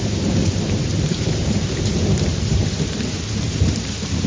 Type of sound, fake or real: fake